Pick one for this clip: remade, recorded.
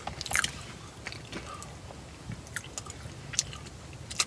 recorded